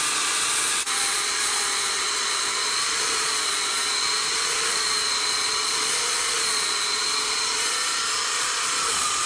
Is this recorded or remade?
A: remade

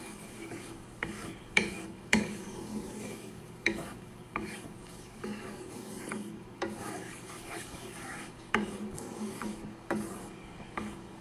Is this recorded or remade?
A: remade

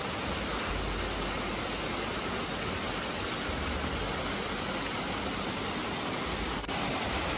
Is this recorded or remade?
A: recorded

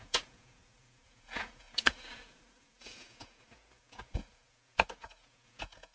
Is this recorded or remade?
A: remade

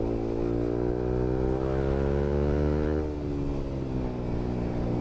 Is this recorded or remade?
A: recorded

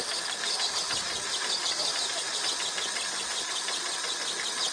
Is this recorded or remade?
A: recorded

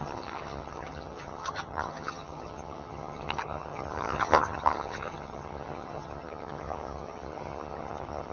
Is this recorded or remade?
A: remade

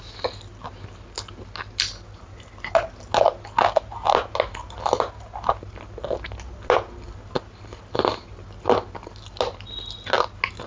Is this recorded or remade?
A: recorded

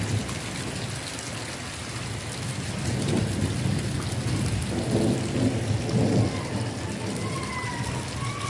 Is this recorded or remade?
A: recorded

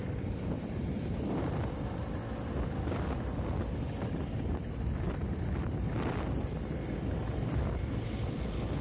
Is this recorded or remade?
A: recorded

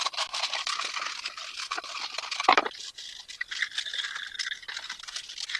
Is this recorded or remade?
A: recorded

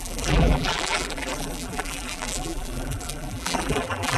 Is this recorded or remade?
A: remade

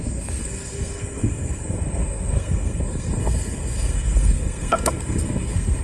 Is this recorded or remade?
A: remade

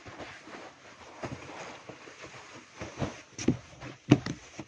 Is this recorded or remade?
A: remade